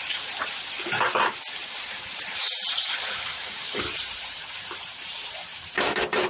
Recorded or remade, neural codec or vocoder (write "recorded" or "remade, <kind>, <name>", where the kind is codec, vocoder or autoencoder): remade, vocoder, BigVGAN v2